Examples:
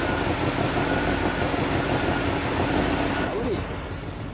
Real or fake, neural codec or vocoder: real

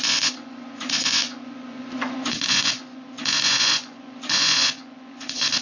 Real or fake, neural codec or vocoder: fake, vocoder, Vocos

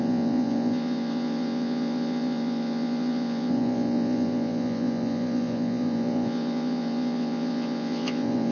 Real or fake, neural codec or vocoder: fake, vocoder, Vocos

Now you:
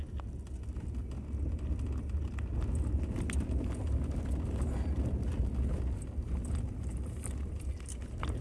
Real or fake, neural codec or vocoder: real